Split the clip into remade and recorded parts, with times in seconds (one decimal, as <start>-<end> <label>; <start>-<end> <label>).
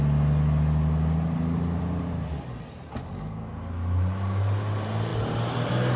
0.0-6.0 recorded